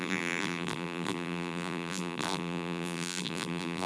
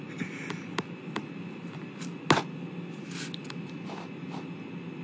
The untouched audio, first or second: second